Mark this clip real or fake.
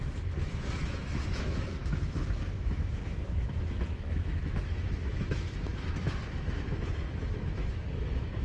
fake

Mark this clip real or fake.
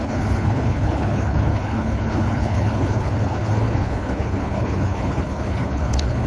fake